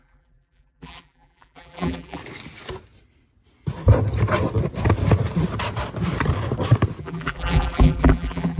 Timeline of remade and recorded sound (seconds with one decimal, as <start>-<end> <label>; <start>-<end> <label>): 0.0-2.2 remade; 2.2-7.0 recorded; 7.0-8.6 remade